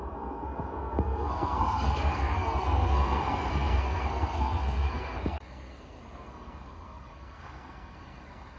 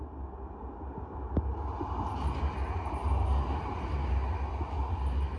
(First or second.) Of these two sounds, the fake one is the first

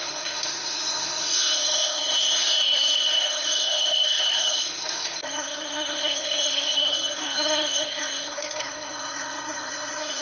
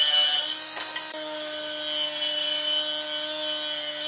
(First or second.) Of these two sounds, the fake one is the first